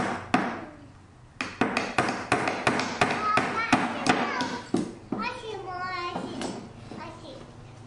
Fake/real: real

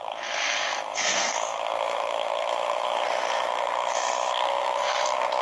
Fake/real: fake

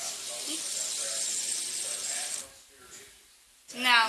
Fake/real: real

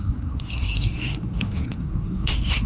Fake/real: fake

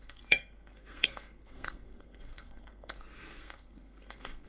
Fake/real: fake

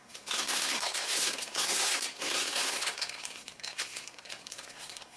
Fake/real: fake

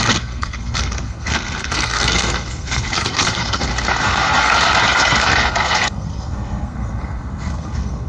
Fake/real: fake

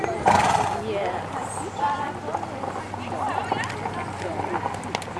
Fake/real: real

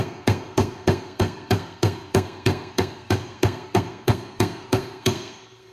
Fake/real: fake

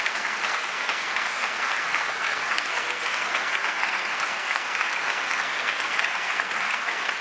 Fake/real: fake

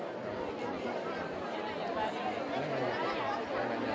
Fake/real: real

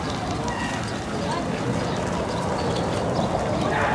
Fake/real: real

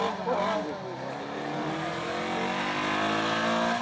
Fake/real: real